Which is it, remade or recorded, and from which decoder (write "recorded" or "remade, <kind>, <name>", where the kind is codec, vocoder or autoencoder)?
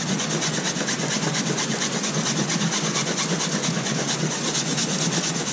remade, vocoder, Vocos